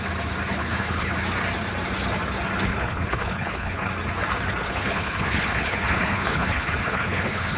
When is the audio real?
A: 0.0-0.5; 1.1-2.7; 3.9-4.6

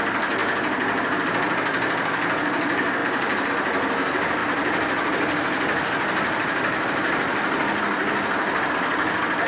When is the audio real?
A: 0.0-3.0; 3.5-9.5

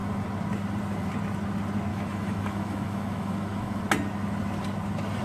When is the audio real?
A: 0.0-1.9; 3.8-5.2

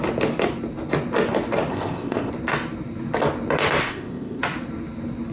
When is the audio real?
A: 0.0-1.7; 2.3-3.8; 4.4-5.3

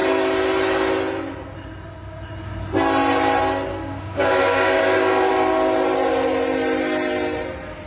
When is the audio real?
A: 0.0-3.7; 5.3-7.9

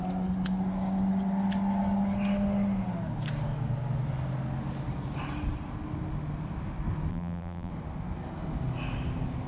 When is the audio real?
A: 0.0-7.1; 7.7-9.5